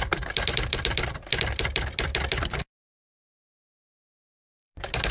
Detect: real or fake fake